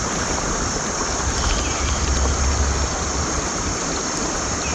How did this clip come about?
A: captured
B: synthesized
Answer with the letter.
B